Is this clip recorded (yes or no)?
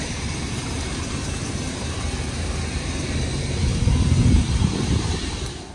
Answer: no